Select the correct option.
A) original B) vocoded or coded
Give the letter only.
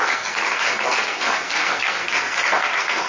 B